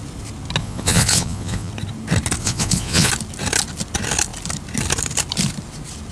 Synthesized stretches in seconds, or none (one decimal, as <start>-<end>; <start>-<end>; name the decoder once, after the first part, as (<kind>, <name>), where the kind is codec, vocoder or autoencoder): 0.6-1.7 (vocoder, Vocos); 2.4-3.1